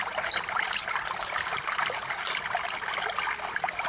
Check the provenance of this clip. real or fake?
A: real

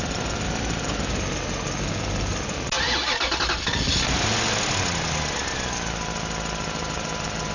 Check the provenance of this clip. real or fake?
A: real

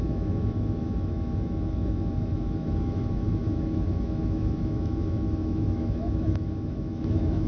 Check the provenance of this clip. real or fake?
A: fake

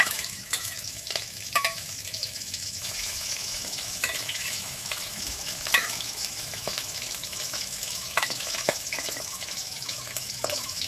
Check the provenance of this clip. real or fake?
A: fake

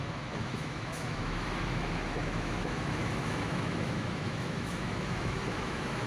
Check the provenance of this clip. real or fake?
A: fake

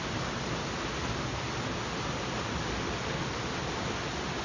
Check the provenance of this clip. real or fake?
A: real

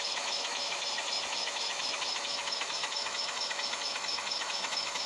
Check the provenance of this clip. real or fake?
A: fake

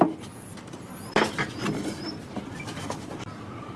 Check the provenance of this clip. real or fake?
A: real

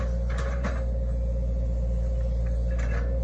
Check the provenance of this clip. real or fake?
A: real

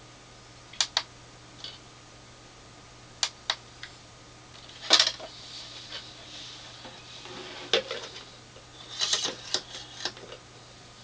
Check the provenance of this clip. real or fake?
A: real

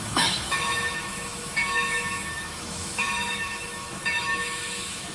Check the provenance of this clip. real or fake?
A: fake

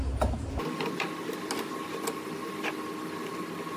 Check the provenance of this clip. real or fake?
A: real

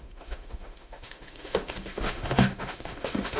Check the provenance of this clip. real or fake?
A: fake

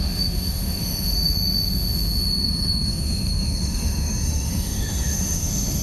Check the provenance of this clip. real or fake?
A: fake